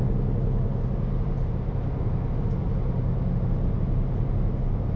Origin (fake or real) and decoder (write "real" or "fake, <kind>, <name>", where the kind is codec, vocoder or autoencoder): real